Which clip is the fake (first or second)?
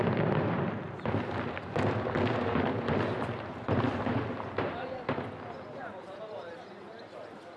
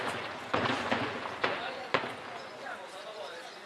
second